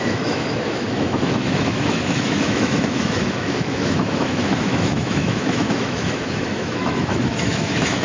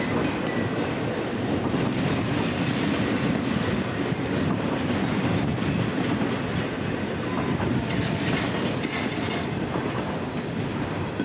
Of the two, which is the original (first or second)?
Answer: second